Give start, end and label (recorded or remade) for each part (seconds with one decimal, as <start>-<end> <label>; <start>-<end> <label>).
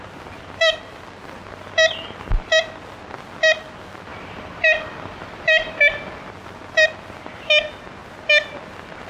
0.0-9.1 recorded